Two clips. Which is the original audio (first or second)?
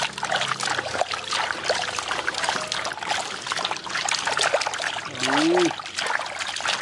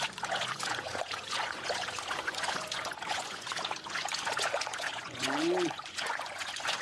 first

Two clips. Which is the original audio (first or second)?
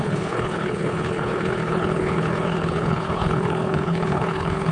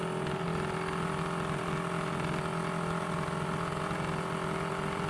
second